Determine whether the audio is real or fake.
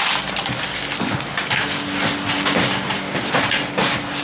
real